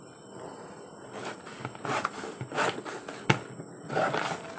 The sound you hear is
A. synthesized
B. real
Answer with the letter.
B